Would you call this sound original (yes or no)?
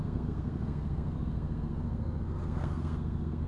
no